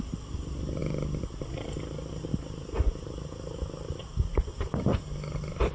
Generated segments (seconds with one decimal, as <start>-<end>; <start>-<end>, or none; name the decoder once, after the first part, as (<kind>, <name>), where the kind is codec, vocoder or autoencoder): none